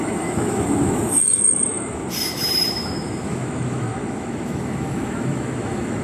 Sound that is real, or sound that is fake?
fake